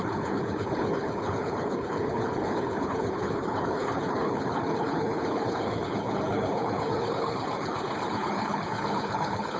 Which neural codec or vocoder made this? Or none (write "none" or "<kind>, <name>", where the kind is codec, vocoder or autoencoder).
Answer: codec, HILCodec